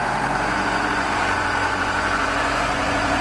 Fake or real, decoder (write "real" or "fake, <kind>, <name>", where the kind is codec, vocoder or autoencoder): fake, vocoder, Vocos